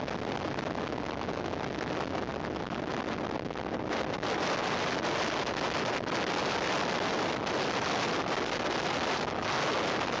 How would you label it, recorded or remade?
recorded